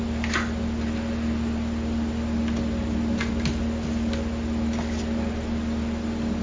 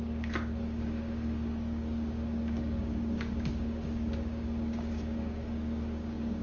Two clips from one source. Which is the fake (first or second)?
second